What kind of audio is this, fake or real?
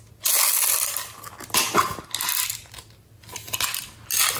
real